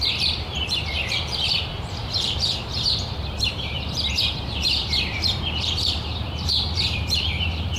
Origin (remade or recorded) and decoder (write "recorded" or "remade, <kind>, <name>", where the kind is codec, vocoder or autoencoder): remade, vocoder, BigVGAN v2